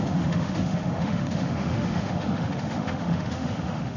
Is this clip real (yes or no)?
no